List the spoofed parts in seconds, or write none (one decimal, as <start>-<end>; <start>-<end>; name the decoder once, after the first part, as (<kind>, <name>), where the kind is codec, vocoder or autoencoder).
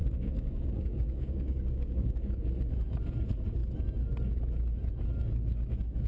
0.0-2.5 (codec, DAC)